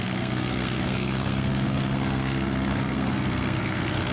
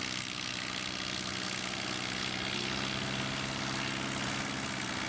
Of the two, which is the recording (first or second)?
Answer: second